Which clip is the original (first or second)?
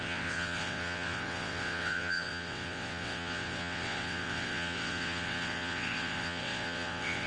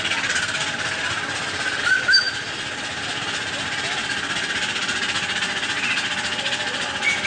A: second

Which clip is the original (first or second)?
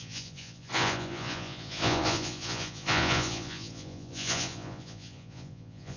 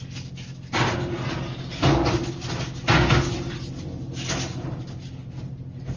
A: second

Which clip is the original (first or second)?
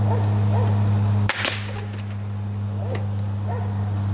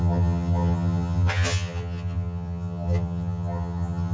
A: first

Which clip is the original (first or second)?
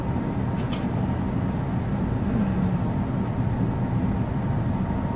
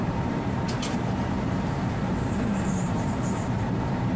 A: first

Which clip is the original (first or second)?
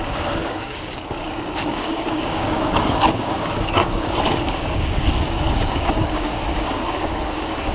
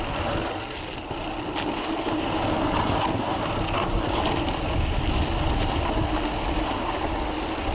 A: second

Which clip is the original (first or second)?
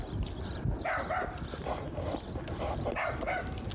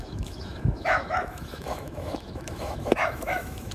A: first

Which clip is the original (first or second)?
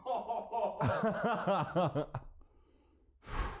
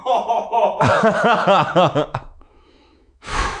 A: first